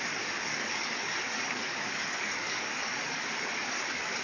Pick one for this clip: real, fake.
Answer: fake